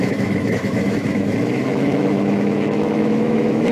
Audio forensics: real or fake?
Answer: fake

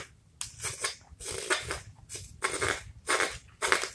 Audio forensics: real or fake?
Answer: real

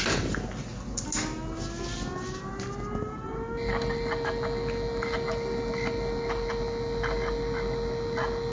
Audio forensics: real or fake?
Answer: real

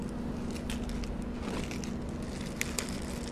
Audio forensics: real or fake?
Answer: real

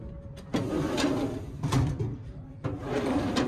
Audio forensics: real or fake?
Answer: real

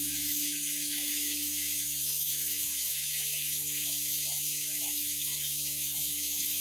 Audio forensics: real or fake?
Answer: fake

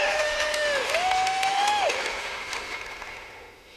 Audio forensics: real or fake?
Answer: fake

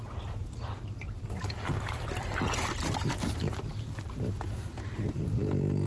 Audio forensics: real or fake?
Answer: real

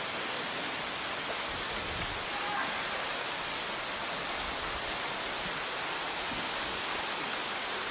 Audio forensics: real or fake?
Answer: real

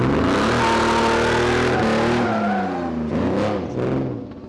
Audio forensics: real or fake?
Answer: real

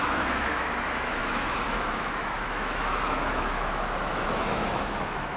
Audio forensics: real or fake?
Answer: fake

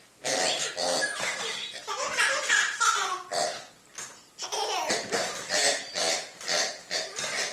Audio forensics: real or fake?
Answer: real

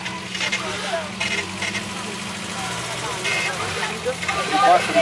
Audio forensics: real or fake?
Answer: real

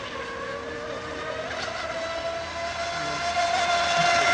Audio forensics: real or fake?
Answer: real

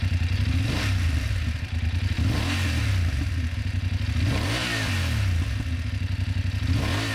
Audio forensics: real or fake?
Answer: real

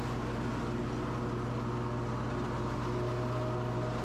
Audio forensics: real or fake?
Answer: real